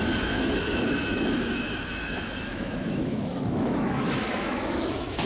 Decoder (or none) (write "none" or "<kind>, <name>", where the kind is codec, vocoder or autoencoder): autoencoder, DAC-VAE